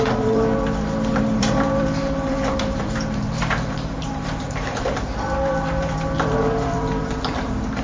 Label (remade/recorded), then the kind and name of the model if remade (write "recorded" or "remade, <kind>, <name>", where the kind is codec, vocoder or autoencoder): remade, vocoder, BigVGAN v2